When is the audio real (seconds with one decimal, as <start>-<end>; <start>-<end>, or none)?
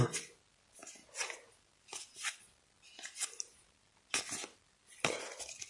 0.0-5.7